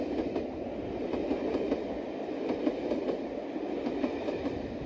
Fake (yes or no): no